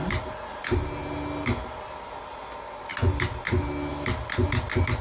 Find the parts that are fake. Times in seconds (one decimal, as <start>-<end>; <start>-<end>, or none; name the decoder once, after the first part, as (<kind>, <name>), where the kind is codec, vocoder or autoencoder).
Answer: none